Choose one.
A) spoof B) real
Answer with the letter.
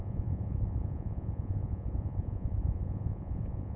A